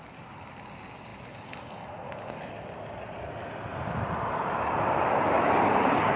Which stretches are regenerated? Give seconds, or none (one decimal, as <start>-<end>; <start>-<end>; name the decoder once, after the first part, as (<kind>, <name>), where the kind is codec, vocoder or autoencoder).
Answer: 3.7-6.2 (vocoder, BigVGAN v2)